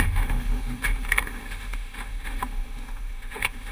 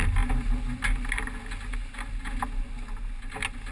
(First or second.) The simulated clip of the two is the first